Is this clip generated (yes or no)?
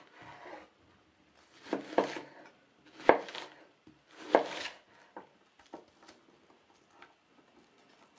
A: no